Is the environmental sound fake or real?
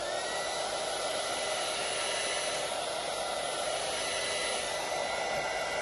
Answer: real